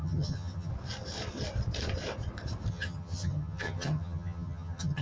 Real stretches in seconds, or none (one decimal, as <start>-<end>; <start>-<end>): 0.7-2.7